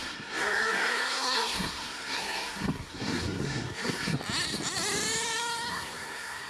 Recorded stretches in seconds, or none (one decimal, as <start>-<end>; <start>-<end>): 4.2-5.7